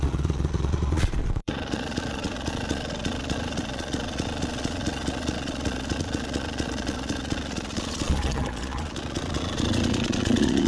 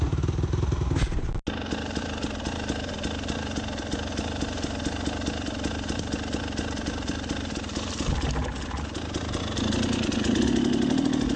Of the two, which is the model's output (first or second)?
first